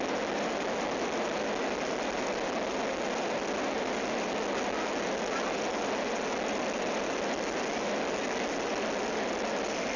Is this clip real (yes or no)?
yes